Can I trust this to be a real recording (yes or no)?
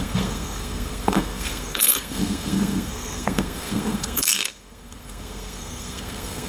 no